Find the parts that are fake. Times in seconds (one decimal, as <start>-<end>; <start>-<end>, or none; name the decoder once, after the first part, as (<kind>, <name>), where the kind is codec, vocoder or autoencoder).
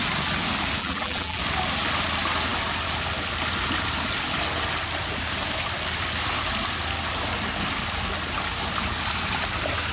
0.8-1.4 (vocoder, BigVGAN v2)